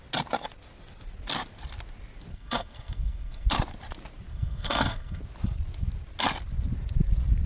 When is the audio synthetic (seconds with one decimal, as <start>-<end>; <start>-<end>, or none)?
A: 2.3-3.5; 4.3-5.2